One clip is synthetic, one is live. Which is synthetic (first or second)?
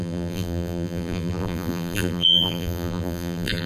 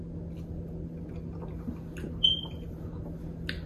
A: first